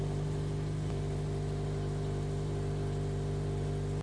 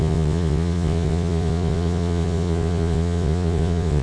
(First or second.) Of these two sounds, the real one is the first